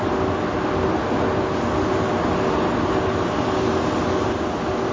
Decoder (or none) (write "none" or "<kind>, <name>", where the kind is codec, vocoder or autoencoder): none